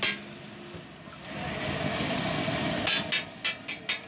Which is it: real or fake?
real